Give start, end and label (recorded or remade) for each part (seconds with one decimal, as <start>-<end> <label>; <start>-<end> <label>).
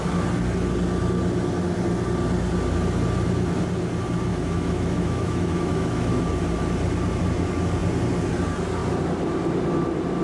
0.0-4.3 recorded; 4.3-6.2 remade; 6.2-10.2 recorded